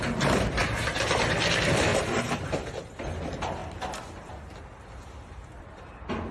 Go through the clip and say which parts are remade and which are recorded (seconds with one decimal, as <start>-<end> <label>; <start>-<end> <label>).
0.0-1.9 recorded; 1.9-2.7 remade; 2.7-6.3 recorded